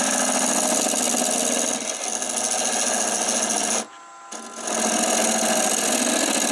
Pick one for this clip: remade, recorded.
recorded